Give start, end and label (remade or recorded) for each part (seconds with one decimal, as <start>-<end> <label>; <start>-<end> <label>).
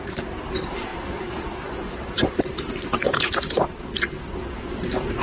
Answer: 0.0-0.9 recorded; 0.9-4.0 remade; 4.0-5.2 recorded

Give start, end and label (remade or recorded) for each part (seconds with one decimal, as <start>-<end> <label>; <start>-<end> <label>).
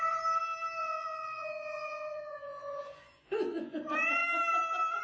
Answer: 0.0-0.8 recorded; 0.8-3.8 remade; 3.8-5.0 recorded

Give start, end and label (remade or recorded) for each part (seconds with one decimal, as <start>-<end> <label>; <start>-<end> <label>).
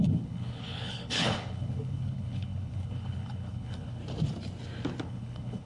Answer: 0.0-4.0 remade; 4.0-5.0 recorded; 5.0-5.7 remade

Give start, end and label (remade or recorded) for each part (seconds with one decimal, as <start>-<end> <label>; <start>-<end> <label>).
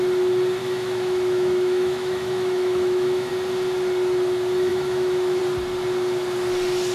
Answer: 0.0-0.6 recorded; 0.6-3.3 remade; 3.3-4.7 recorded; 4.7-5.4 remade; 5.4-6.9 recorded